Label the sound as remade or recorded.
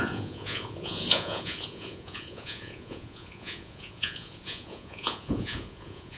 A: remade